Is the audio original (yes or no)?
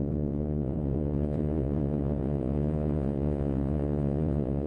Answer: no